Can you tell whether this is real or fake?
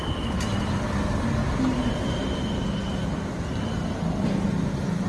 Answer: real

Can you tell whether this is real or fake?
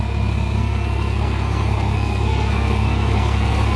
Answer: fake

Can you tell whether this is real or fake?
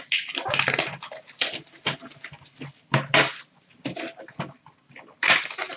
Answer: real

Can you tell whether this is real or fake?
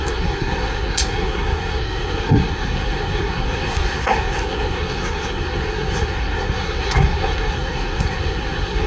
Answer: fake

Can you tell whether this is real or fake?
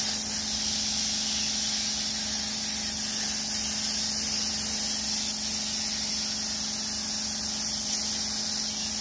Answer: real